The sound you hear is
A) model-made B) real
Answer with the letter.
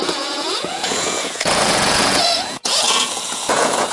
A